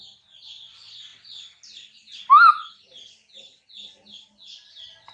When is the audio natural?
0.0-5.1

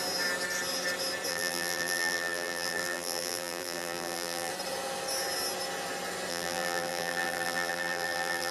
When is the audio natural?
0.0-1.3; 4.5-6.3

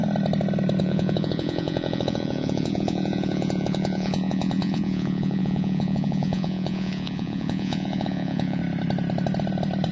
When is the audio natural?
0.0-0.8; 8.6-9.9